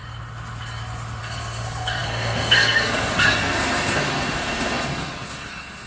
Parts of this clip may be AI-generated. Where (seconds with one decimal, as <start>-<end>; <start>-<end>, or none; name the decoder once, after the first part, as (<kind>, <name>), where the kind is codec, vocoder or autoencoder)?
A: 1.2-5.9 (codec, SNAC)